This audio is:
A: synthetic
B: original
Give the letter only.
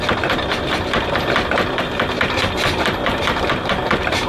A